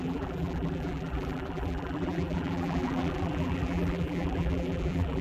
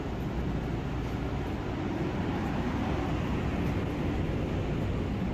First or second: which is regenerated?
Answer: first